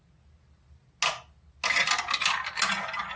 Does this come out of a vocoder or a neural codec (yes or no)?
no